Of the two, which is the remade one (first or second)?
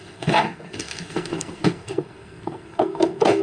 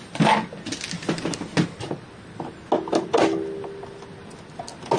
first